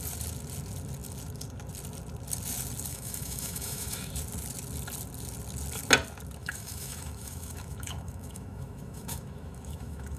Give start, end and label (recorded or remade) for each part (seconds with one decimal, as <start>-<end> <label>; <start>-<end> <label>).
0.0-2.9 recorded; 2.9-4.1 remade; 4.1-6.4 recorded; 6.4-10.2 remade